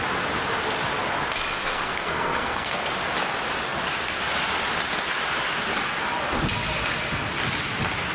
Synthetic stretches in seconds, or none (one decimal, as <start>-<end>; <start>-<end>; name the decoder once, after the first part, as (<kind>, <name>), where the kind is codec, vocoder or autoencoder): 1.6-2.9 (codec, SNAC)